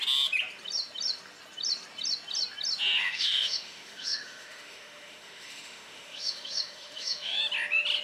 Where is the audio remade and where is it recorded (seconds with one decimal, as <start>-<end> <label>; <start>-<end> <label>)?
0.0-3.0 recorded; 3.0-7.4 remade; 7.4-8.0 recorded